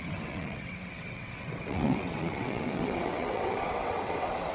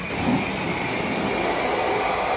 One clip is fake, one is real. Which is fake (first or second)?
first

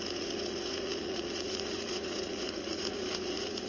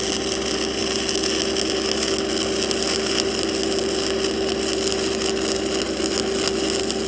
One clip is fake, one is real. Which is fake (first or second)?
first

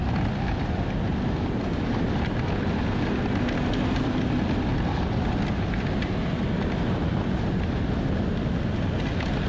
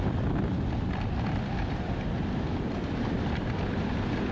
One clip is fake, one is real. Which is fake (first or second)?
second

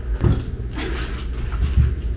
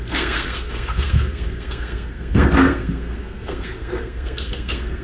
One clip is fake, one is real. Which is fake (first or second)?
second